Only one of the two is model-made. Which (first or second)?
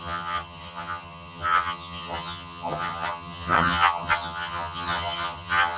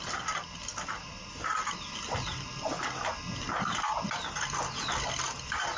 first